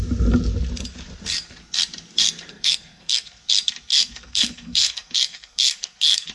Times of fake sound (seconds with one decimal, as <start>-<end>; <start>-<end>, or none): 2.5-3.4; 3.9-6.3